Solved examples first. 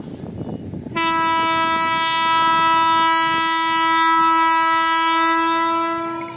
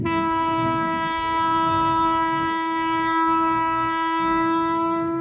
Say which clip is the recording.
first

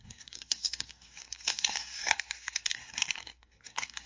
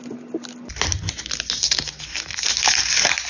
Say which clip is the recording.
second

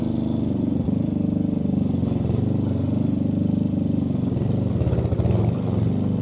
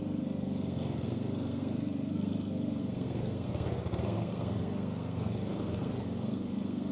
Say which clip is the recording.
first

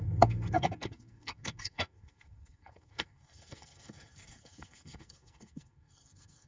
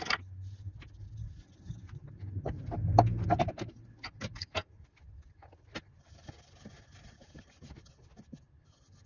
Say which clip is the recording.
second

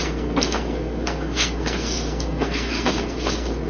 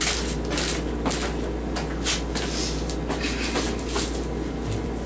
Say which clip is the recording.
second